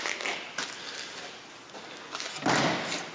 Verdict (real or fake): real